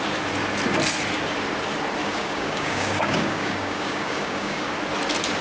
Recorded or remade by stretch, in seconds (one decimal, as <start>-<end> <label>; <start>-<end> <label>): 0.0-2.0 recorded; 2.0-4.7 remade; 4.7-5.4 recorded